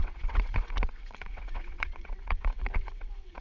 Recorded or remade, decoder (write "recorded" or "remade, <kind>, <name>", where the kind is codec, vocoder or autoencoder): remade, vocoder, WaveNeXt